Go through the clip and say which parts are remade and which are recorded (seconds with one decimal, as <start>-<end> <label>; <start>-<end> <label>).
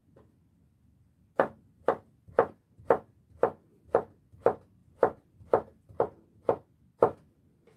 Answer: 0.0-4.8 recorded; 4.8-6.0 remade; 6.0-7.8 recorded